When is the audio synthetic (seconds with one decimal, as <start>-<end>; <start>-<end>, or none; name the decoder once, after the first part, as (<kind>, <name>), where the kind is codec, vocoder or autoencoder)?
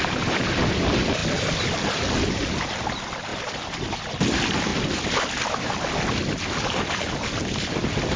none